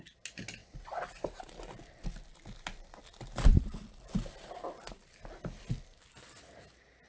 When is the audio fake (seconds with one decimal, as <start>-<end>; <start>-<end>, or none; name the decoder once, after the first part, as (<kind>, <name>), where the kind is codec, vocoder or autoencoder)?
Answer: none